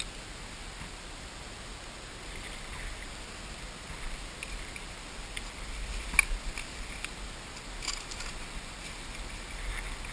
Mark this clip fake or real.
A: real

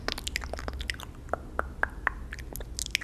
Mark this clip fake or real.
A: real